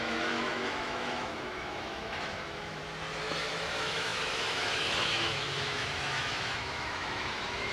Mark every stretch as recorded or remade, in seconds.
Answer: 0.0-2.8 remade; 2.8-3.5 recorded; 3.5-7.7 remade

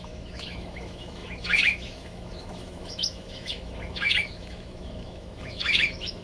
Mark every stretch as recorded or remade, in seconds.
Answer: 0.0-6.2 remade

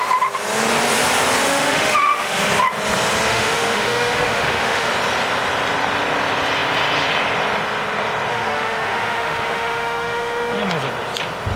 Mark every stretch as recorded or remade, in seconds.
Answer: 0.0-1.4 recorded; 1.4-2.4 remade; 2.4-3.3 recorded; 3.3-4.9 remade; 4.9-8.3 recorded; 8.3-10.6 remade; 10.6-11.6 recorded

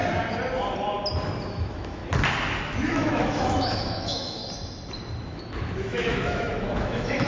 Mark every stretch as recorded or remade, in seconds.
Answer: 0.0-1.5 recorded; 1.5-2.0 remade; 2.0-2.6 recorded; 2.6-4.4 remade; 4.4-5.2 recorded; 5.2-7.3 remade

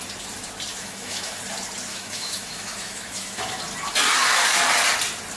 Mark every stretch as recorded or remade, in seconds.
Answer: 0.0-0.7 recorded; 0.7-1.4 remade; 1.4-1.9 recorded; 1.9-3.6 remade; 3.6-5.4 recorded

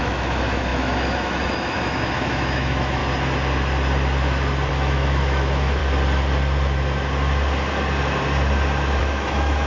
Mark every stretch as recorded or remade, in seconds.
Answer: 0.0-3.0 remade; 3.0-4.7 recorded; 4.7-5.8 remade; 5.8-9.0 recorded; 9.0-9.7 remade